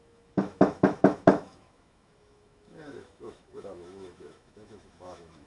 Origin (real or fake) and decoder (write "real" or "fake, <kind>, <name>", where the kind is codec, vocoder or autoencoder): fake, autoencoder, DAC-VAE